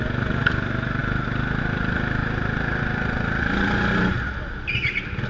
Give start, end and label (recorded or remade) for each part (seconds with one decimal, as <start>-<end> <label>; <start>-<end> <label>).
0.0-5.3 recorded

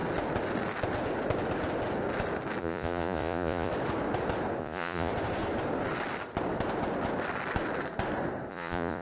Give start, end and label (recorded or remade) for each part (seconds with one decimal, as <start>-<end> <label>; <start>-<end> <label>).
0.0-2.6 recorded; 2.6-3.7 remade; 3.7-4.6 recorded; 4.6-5.1 remade; 5.1-8.5 recorded; 8.5-9.0 remade

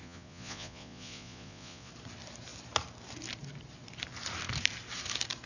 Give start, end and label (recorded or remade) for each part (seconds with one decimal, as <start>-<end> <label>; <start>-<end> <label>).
0.0-1.9 remade; 1.9-5.5 recorded

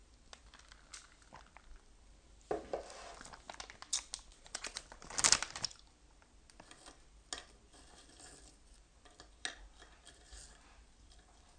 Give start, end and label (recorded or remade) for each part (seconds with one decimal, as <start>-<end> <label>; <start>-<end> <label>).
0.0-4.3 recorded; 4.3-4.8 remade; 4.8-11.6 recorded

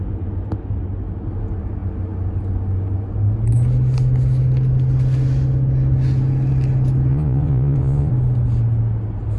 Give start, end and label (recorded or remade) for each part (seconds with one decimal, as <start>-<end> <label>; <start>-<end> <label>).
0.0-7.1 recorded; 7.1-8.1 remade; 8.1-9.4 recorded